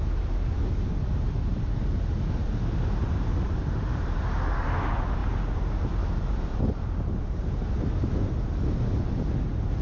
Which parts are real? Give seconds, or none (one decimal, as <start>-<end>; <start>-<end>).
0.0-3.3; 4.2-5.2; 6.6-9.8